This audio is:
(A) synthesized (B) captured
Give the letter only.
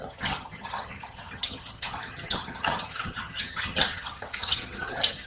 A